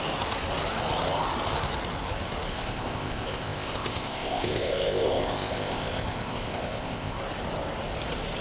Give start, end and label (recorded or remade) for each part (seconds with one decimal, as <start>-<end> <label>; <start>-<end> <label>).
0.0-2.5 recorded; 2.5-7.2 remade; 7.2-8.4 recorded